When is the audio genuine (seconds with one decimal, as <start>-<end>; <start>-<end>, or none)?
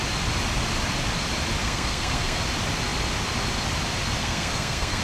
0.0-1.6; 2.4-4.2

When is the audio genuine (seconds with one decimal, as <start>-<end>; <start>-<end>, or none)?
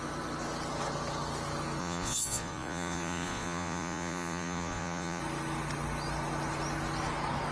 0.0-1.8; 5.2-7.5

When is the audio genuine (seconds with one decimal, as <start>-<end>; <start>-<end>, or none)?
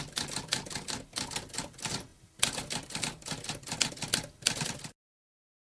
0.0-5.7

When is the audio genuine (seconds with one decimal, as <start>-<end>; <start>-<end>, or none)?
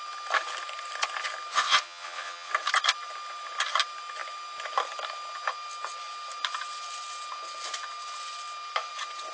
0.0-1.5; 2.5-9.3